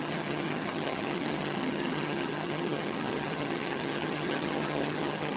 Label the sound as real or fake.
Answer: fake